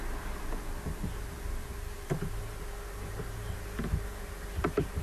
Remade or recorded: remade